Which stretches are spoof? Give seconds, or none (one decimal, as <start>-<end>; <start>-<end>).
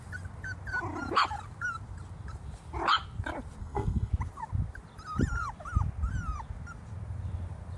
3.6-4.1